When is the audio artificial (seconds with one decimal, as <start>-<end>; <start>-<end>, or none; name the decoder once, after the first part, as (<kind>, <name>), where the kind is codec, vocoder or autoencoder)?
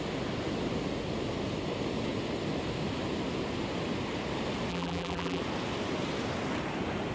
4.7-5.4 (vocoder, BigVGAN v2)